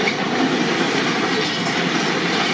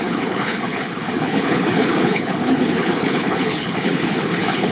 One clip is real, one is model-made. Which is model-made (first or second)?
second